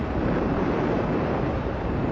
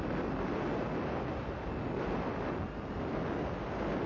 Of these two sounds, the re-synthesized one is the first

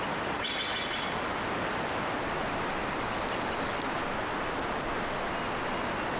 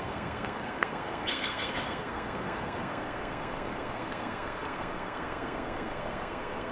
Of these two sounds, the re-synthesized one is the second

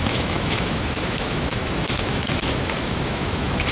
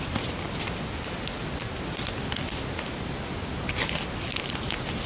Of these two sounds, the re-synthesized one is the first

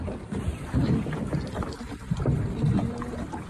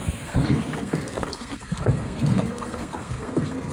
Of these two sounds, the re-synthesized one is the second